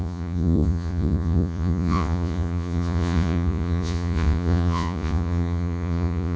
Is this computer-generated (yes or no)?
yes